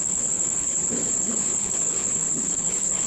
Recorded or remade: remade